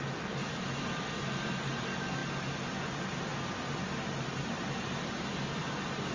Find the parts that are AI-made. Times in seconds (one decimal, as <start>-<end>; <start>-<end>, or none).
none

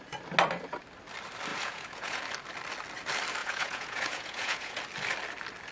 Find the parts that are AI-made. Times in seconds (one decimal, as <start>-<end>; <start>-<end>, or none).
1.5-2.2; 3.4-4.8

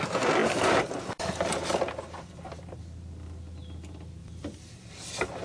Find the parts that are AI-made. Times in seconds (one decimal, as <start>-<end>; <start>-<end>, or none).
0.4-2.8; 4.2-5.4

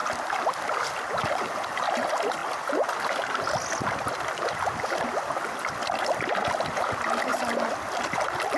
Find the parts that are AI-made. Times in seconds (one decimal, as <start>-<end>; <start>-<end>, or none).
none

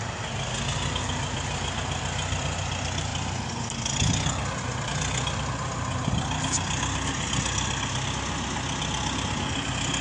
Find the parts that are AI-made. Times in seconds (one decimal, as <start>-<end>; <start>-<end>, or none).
none